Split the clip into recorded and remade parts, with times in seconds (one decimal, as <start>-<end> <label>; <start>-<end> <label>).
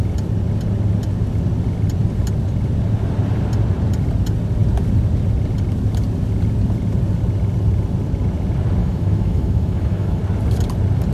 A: 0.0-8.8 recorded; 8.8-10.2 remade; 10.2-11.1 recorded